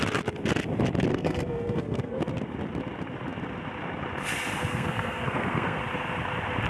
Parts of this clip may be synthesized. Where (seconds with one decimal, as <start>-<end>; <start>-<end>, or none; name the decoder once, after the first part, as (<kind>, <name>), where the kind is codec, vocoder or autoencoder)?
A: 1.1-2.2 (codec, SNAC); 4.7-5.8